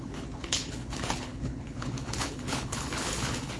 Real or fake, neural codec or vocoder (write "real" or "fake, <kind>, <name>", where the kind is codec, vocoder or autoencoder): fake, codec, HILCodec